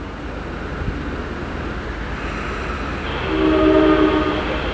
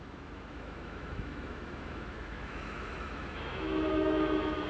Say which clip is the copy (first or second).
second